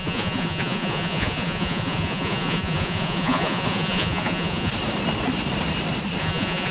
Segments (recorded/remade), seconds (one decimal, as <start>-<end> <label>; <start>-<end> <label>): 0.0-4.7 remade; 4.7-6.2 recorded; 6.2-6.7 remade